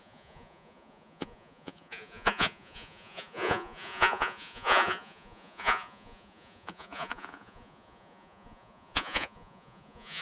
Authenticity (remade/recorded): remade